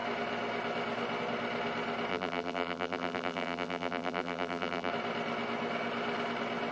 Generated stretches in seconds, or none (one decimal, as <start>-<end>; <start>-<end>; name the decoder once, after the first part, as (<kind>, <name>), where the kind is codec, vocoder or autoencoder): 2.1-4.9 (vocoder, BigVGAN v2)